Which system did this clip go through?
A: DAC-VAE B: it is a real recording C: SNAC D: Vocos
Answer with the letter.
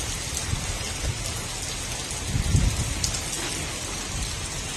B